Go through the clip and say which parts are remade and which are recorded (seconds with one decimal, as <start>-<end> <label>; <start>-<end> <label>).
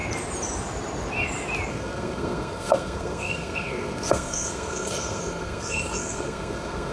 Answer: 0.0-1.7 recorded; 1.7-6.9 remade